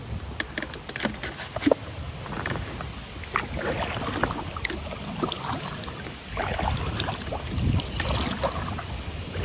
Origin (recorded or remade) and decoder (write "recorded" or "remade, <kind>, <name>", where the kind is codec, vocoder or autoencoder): recorded